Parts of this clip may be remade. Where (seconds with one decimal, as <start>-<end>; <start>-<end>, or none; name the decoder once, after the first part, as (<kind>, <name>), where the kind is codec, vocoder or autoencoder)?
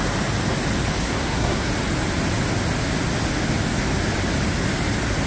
1.0-1.7 (codec, SNAC)